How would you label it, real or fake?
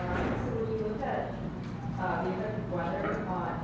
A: real